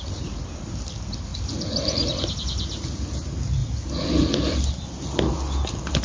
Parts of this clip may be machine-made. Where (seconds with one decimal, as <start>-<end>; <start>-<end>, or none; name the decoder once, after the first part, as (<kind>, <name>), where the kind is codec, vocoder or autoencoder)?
none